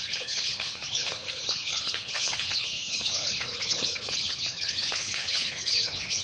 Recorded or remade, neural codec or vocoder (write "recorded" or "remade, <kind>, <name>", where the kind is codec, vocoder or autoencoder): remade, codec, HILCodec